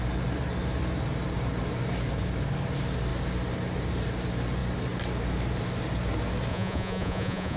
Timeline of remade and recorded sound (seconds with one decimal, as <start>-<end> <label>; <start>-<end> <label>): 0.0-6.5 recorded; 6.5-7.6 remade